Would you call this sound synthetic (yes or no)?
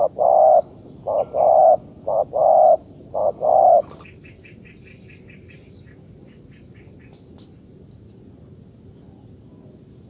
no